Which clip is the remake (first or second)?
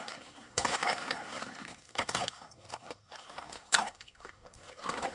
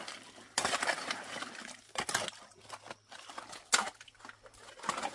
first